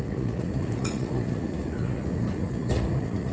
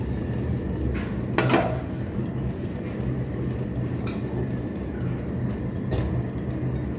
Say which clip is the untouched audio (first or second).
second